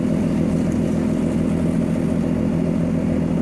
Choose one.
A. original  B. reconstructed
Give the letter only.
A